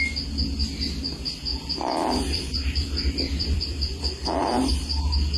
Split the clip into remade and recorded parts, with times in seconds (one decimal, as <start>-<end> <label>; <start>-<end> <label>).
0.0-1.5 recorded; 1.5-4.7 remade; 4.7-5.4 recorded

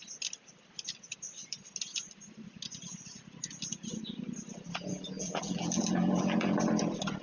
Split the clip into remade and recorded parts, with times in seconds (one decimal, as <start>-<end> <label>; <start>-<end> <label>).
0.0-4.9 recorded; 4.9-6.6 remade; 6.6-7.2 recorded

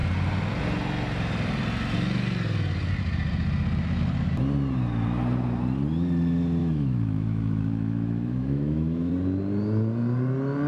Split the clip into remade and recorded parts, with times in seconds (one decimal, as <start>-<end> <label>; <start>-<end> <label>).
0.0-6.6 recorded; 6.6-9.1 remade; 9.1-10.7 recorded

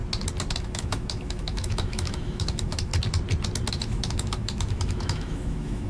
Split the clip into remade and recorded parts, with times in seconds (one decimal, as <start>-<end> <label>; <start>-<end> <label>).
0.0-0.6 recorded; 0.6-2.9 remade; 2.9-3.7 recorded; 3.7-5.9 remade